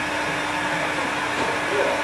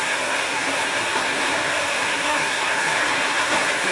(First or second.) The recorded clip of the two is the first